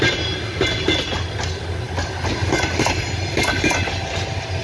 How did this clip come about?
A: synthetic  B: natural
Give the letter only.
B